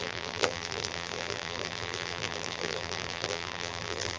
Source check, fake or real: fake